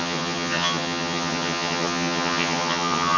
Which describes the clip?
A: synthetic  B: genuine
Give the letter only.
A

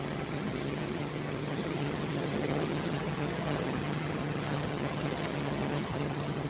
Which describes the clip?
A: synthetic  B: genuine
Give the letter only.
A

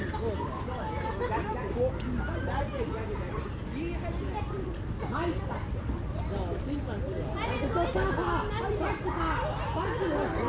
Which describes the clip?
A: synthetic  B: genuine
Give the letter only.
B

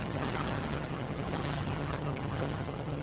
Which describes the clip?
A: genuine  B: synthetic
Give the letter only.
B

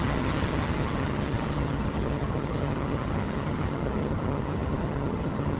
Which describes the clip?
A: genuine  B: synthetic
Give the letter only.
B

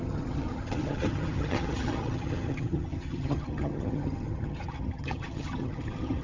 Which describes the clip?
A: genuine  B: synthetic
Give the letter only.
B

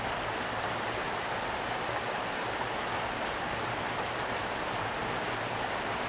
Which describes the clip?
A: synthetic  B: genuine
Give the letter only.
B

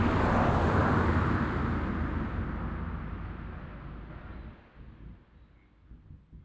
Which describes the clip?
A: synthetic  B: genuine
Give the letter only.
B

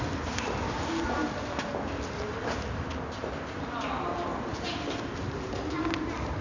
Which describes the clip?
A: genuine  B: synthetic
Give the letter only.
A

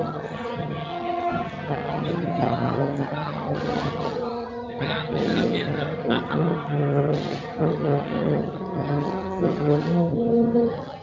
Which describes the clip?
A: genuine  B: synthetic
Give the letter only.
B